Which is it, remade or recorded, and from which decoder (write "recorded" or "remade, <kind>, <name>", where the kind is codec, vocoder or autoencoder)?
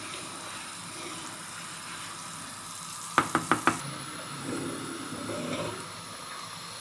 recorded